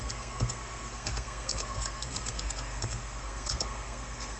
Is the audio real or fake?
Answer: fake